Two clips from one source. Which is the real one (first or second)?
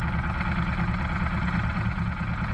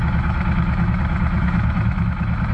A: first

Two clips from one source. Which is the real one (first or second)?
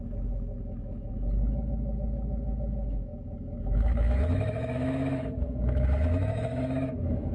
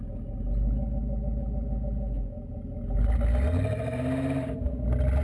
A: second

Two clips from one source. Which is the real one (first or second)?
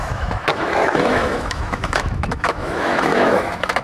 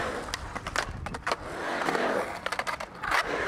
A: second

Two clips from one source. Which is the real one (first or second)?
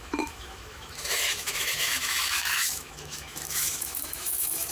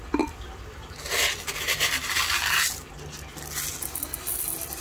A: second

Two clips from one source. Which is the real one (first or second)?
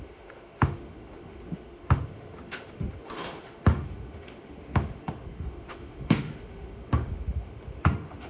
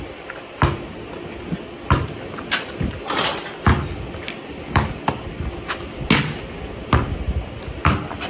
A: second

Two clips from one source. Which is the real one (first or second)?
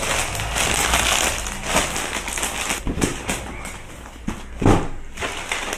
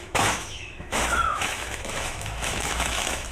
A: first